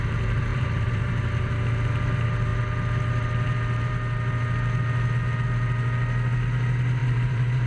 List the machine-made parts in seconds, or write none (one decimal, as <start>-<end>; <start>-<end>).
0.5-1.7; 7.0-7.7